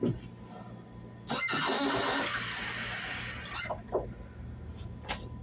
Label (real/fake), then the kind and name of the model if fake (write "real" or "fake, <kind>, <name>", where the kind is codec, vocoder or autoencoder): real